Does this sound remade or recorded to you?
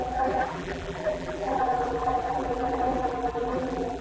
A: remade